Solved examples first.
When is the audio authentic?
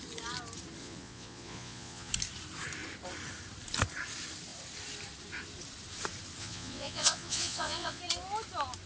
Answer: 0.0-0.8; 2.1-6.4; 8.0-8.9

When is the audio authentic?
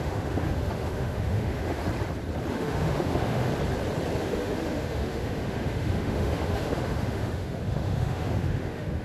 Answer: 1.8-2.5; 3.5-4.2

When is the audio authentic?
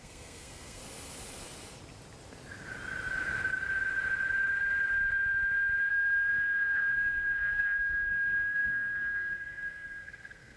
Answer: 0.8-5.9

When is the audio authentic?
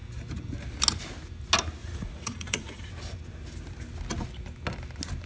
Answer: 0.0-1.8; 2.9-5.3